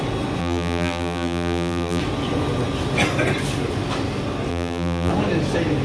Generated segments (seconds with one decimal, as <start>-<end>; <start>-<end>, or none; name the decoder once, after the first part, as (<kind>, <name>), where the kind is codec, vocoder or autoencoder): 0.4-2.0 (vocoder, BigVGAN v2); 4.5-5.1